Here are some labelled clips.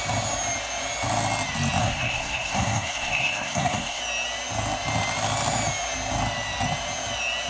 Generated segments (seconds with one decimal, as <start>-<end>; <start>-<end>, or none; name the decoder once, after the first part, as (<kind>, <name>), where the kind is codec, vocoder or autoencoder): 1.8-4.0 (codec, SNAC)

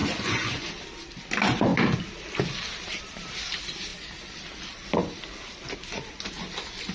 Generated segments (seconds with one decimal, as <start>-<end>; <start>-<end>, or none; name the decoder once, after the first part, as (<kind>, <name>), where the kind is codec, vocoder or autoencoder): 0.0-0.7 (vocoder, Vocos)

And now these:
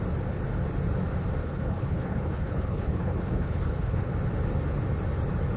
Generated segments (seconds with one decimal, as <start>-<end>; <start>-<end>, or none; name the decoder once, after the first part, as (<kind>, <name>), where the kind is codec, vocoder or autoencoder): 1.4-4.1 (codec, HILCodec)

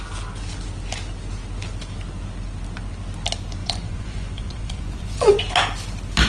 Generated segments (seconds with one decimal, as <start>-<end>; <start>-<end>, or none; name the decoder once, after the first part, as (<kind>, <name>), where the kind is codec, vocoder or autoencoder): 3.6-5.4 (vocoder, Vocos)